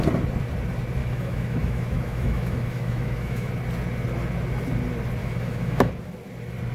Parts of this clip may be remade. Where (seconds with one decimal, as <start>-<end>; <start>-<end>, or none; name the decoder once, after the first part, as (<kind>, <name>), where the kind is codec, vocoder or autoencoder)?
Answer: 1.0-3.5 (autoencoder, DAC-VAE); 5.2-5.9